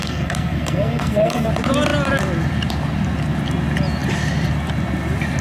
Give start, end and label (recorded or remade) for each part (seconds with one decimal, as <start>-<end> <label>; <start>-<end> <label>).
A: 0.0-1.5 remade; 1.5-5.4 recorded